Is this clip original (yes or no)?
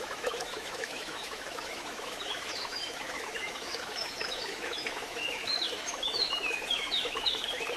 no